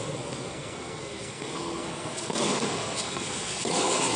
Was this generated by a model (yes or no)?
yes